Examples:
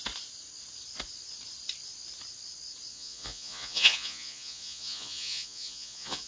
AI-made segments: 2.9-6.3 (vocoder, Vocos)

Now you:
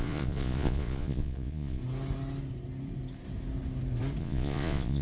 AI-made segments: 0.0-1.8 (vocoder, Vocos); 4.2-5.0

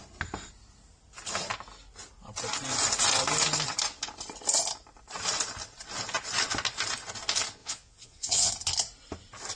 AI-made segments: 7.6-8.5 (vocoder, Vocos)

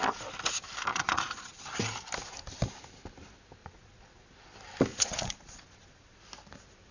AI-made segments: 0.9-1.6 (vocoder, Vocos); 3.6-4.3; 4.9-6.2